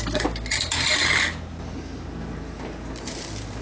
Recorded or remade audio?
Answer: recorded